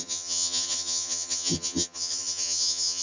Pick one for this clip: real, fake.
fake